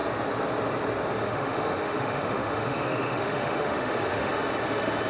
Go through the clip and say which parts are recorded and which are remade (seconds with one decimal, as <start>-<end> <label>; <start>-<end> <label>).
0.0-1.2 recorded; 1.2-4.3 remade; 4.3-5.1 recorded